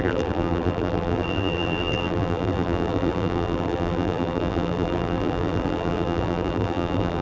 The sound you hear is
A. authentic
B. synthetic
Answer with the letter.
B